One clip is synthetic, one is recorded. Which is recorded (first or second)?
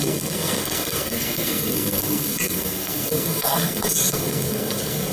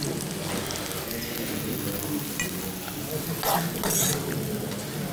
second